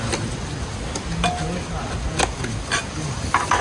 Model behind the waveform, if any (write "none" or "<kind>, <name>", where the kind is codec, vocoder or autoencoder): none